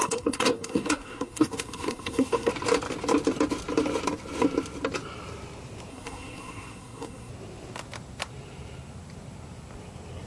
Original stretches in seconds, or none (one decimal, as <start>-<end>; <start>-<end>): 2.5-5.9; 7.3-10.3